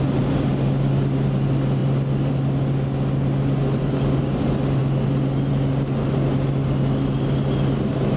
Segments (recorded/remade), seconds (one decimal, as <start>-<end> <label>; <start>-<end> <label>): 0.0-8.2 recorded